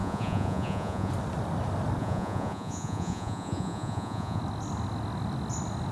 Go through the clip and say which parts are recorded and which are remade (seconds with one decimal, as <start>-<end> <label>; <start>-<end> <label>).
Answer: 0.0-1.1 remade; 1.1-2.0 recorded; 2.0-4.4 remade; 4.4-5.9 recorded